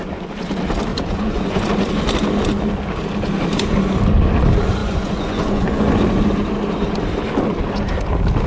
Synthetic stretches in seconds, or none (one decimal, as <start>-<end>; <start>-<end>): 0.9-1.6; 4.8-5.9